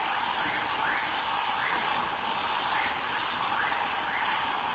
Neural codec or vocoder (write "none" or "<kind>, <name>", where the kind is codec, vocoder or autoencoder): none